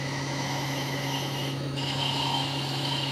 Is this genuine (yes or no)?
no